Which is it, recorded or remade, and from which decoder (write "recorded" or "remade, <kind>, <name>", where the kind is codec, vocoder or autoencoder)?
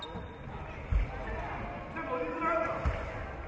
recorded